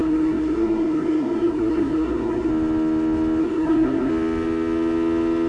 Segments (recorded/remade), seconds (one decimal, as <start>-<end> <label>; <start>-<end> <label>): 0.0-2.5 remade; 2.5-3.4 recorded; 3.4-4.1 remade; 4.1-5.5 recorded